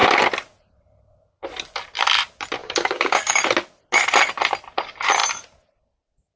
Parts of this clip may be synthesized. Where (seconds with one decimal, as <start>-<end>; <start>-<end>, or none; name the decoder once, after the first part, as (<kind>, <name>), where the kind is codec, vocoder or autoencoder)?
2.6-3.4 (codec, DAC)

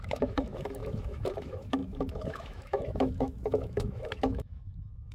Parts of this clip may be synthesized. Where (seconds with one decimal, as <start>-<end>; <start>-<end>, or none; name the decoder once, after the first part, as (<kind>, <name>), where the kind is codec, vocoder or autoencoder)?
0.0-5.1 (autoencoder, DAC-VAE)

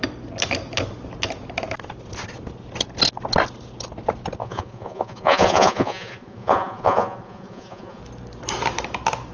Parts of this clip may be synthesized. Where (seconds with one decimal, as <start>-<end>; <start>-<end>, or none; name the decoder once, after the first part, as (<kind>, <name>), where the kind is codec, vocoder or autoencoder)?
4.4-8.0 (vocoder, Vocos)

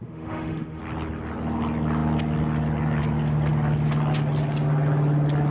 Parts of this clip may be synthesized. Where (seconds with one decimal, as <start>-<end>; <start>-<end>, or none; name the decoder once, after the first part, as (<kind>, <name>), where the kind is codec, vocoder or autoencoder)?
0.0-0.8 (autoencoder, DAC-VAE)

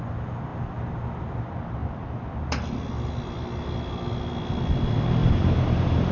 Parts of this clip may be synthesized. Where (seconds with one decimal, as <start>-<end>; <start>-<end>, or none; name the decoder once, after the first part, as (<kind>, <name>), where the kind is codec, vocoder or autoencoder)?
5.2-6.1 (vocoder, BigVGAN v2)

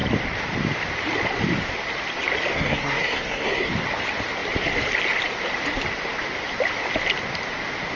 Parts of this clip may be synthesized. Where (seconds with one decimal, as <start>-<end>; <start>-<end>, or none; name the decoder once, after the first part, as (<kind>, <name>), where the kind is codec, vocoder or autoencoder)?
2.5-3.7 (codec, SNAC)